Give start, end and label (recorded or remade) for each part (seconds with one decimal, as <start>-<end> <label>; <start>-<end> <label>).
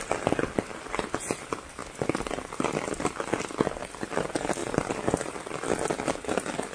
0.0-1.8 remade; 1.8-4.0 recorded; 4.0-6.7 remade